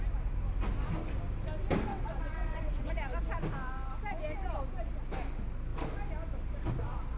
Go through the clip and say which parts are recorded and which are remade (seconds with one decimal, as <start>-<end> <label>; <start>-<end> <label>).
0.0-1.9 recorded; 1.9-2.9 remade; 2.9-7.2 recorded